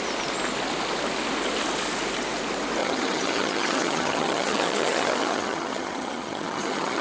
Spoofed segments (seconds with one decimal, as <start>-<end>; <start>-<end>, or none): 2.8-7.0